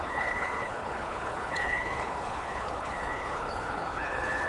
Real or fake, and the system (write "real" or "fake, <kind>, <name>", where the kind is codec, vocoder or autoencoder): fake, codec, HILCodec